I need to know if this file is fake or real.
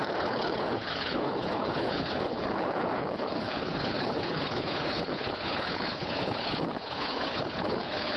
fake